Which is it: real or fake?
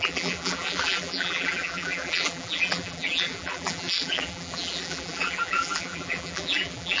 fake